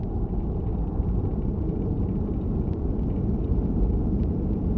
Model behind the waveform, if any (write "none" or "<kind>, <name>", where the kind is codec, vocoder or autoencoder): vocoder, BigVGAN v2